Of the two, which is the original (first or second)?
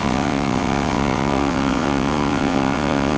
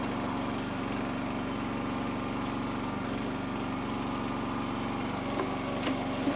second